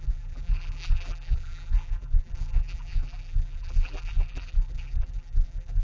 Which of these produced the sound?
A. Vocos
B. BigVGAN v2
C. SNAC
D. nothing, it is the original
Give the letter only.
B